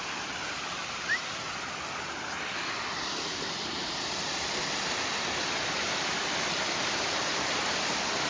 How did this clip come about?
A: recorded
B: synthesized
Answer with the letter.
B